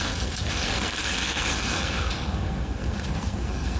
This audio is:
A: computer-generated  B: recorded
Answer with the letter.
A